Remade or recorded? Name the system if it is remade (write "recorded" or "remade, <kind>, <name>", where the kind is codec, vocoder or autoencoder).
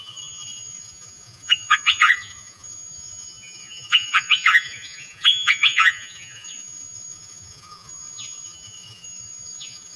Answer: remade, vocoder, Vocos